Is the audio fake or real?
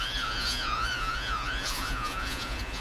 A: fake